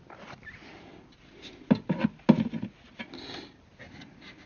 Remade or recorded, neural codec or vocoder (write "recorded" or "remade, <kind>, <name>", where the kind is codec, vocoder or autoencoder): recorded